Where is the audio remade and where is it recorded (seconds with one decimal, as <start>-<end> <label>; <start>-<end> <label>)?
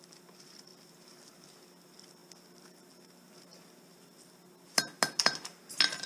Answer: 0.0-6.1 recorded